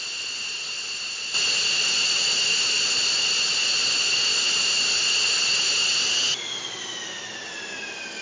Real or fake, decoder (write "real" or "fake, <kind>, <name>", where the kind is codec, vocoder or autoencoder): real